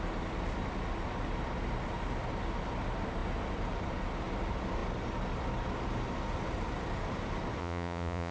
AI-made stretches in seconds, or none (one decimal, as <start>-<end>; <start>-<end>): 7.6-8.3